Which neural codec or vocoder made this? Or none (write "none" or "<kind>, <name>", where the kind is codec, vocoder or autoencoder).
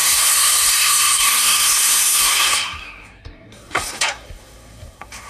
codec, SNAC